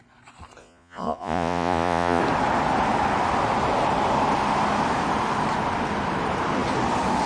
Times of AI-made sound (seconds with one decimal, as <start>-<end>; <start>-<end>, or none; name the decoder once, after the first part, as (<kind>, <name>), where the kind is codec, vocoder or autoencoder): 0.6-2.2 (vocoder, Vocos)